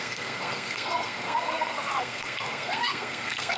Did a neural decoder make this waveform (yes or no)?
yes